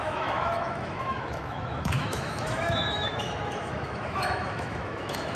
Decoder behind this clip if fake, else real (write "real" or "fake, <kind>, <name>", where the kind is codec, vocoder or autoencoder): fake, autoencoder, DAC-VAE